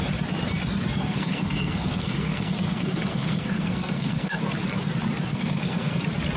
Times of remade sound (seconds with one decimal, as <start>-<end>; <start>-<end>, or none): 1.0-4.4; 5.3-6.0